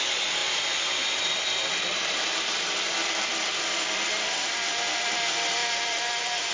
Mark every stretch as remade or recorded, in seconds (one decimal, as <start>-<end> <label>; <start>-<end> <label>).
0.0-6.5 remade